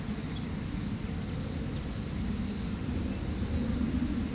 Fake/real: real